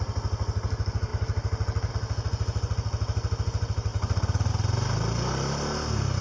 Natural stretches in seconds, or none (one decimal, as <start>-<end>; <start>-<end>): 0.0-6.2